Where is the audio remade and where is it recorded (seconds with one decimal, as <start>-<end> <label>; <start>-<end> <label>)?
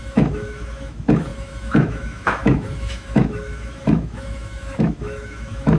0.0-5.8 remade